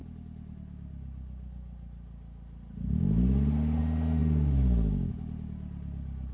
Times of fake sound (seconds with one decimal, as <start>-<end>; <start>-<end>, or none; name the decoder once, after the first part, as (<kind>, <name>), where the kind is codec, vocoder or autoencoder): none

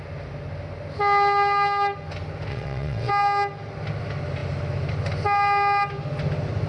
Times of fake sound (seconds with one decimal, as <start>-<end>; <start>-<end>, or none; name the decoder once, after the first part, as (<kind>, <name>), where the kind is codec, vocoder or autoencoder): 2.5-3.1 (vocoder, WaveNeXt)

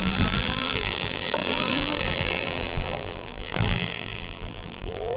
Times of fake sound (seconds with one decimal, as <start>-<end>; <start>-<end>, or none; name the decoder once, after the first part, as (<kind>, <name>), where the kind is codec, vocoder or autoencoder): 0.0-5.2 (vocoder, BigVGAN v2)

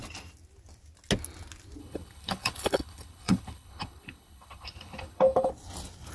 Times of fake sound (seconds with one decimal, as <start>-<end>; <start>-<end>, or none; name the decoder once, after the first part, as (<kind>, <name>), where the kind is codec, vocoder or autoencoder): 1.8-5.5 (codec, HILCodec)